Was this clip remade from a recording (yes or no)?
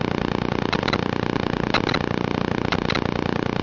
no